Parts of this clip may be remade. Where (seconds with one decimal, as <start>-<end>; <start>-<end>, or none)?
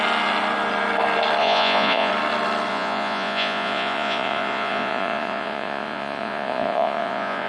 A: 1.4-2.1; 2.7-7.5